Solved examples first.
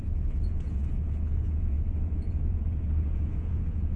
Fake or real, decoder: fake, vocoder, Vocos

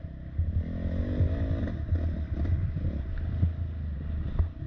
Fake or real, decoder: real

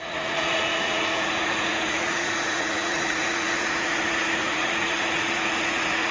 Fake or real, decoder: fake, vocoder, Vocos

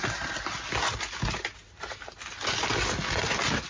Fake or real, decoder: real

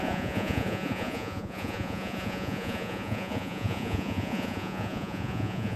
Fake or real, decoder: fake, vocoder, Vocos